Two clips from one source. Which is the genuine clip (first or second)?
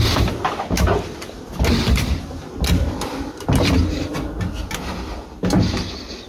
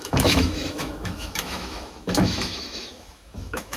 first